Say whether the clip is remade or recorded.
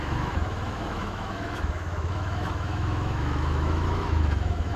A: remade